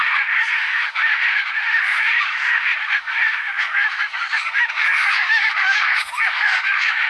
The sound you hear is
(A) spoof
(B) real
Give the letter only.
A